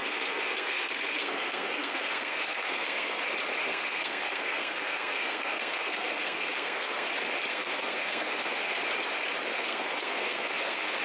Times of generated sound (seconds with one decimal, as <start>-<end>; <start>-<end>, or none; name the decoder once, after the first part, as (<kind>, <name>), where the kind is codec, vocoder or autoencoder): 0.0-3.2 (codec, SNAC); 3.7-7.1; 7.5-8.8; 9.5-11.0